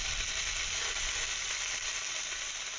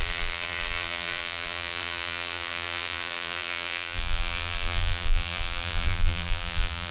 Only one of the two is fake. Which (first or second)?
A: second